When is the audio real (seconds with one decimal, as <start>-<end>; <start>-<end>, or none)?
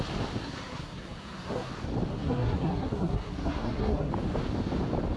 0.0-0.4; 1.7-2.1; 4.1-5.2